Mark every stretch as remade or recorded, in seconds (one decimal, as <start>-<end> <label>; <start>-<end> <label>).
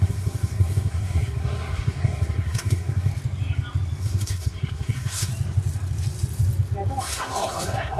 0.0-3.1 remade; 3.1-4.0 recorded; 4.0-5.3 remade; 5.3-7.0 recorded; 7.0-8.0 remade